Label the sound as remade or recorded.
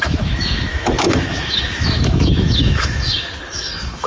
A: remade